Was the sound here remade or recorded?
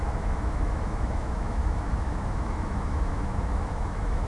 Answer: remade